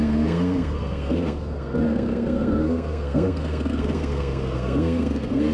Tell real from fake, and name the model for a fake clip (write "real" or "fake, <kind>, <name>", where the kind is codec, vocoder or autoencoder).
fake, codec, SNAC